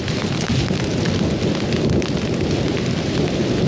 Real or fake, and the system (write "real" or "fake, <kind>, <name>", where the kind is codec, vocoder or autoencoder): real